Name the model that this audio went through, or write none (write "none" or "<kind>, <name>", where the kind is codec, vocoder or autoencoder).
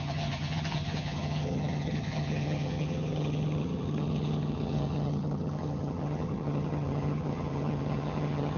vocoder, HiFi-GAN